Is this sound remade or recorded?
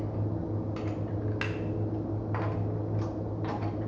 recorded